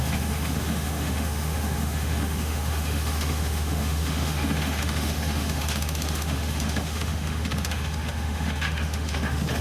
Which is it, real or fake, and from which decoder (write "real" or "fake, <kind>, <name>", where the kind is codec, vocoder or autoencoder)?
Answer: fake, autoencoder, DAC-VAE